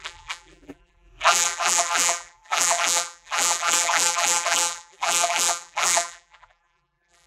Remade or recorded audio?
remade